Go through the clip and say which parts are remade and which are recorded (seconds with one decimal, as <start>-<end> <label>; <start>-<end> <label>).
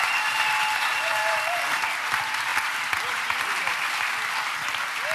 0.0-5.1 recorded